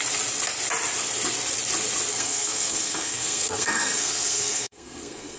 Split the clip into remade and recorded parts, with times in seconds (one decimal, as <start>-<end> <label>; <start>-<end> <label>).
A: 0.0-2.1 recorded; 2.1-5.4 remade